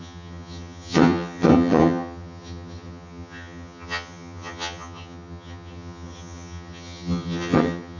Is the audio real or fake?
fake